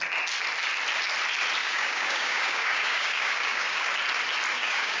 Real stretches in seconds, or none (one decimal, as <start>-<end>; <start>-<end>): 0.0-1.6; 3.9-4.5